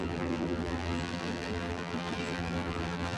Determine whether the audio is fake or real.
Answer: fake